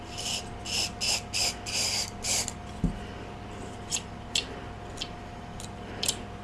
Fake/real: real